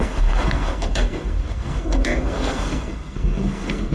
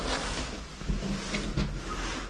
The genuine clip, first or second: second